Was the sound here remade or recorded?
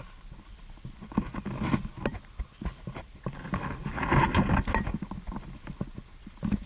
remade